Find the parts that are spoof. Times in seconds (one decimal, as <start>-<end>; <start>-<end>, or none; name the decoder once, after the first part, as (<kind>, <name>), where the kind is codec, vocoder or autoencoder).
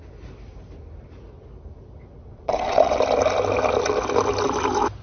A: 2.2-3.0 (vocoder, WaveNeXt)